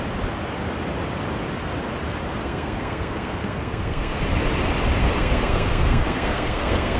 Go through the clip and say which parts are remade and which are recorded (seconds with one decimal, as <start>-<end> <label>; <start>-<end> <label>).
0.0-2.4 recorded; 2.4-4.2 remade; 4.2-5.0 recorded; 5.0-7.0 remade